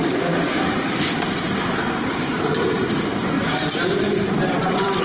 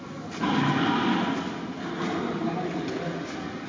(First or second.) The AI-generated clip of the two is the first